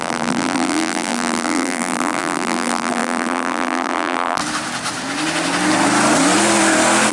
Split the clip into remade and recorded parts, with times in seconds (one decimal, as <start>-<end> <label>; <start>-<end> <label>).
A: 0.0-4.4 remade; 4.4-7.1 recorded